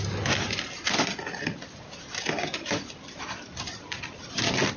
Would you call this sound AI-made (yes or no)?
yes